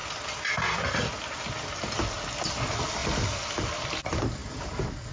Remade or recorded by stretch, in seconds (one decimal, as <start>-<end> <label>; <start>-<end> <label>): 0.0-3.0 recorded; 3.0-3.9 remade; 3.9-5.1 recorded